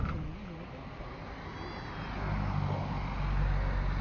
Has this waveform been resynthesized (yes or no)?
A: no